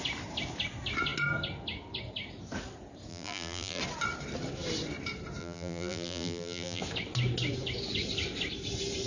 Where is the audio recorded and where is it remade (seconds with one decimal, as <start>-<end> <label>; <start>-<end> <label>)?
0.0-3.1 recorded; 3.1-3.8 remade; 3.8-5.4 recorded; 5.4-6.8 remade; 6.8-9.1 recorded